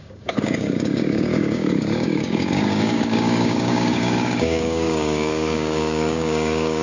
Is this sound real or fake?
fake